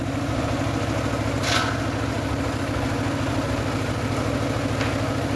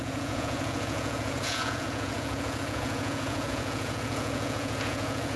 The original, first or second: first